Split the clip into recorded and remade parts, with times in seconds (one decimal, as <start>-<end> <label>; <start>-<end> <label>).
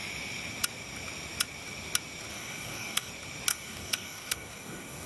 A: 0.0-2.3 recorded; 2.3-3.1 remade; 3.1-3.5 recorded; 3.5-5.1 remade